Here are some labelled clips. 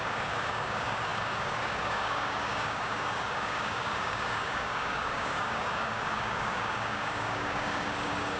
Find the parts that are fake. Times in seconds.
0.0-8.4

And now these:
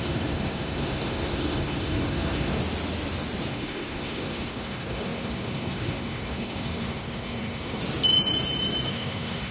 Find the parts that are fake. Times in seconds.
0.0-2.6; 3.5-7.8; 8.9-9.5

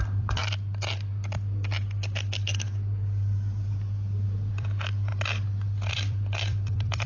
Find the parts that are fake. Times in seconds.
0.0-0.4; 4.5-5.1; 5.9-7.1